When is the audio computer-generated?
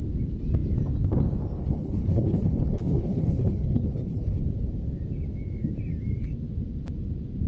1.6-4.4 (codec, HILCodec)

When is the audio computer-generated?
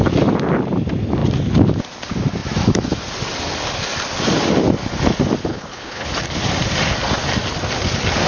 5.5-6.1 (codec, HILCodec)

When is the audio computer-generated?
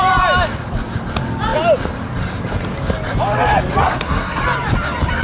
3.8-4.4 (codec, SNAC)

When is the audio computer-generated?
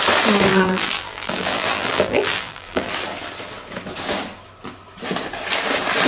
0.5-2.9 (vocoder, BigVGAN v2)